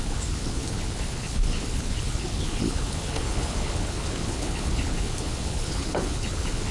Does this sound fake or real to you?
fake